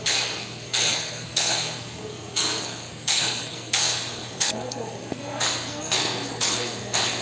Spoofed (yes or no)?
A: yes